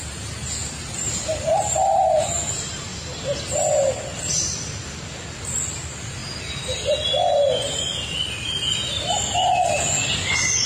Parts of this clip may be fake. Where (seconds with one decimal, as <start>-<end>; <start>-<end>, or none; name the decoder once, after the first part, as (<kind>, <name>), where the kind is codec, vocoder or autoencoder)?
none